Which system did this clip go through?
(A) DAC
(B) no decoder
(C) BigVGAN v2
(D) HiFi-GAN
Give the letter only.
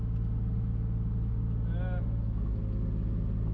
B